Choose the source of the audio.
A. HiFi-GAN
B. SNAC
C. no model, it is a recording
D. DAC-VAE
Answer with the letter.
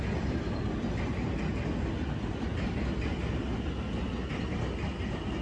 C